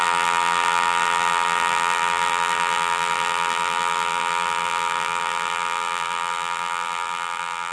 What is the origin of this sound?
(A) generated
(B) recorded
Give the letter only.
A